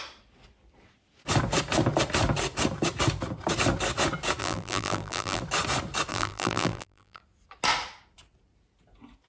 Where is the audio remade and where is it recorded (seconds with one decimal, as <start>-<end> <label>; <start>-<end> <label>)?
0.0-4.4 recorded; 4.4-5.4 remade; 5.4-6.1 recorded; 6.1-7.2 remade; 7.2-9.3 recorded